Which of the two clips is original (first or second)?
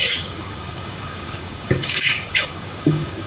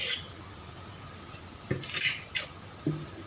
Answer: second